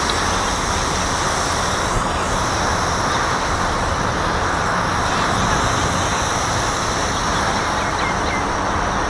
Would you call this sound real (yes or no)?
yes